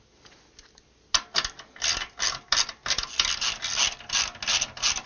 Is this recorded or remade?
recorded